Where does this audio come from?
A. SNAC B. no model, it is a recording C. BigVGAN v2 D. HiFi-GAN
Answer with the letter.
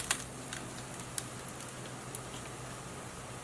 B